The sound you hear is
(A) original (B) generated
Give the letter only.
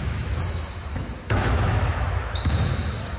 B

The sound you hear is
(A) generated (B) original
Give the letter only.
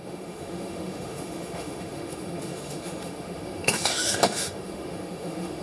A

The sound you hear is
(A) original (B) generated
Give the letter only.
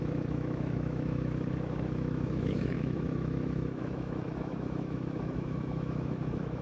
B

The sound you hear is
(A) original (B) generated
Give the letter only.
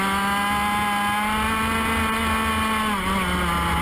A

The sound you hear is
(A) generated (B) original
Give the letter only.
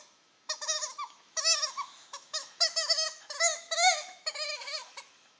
A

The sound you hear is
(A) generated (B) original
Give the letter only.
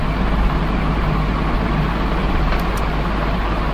B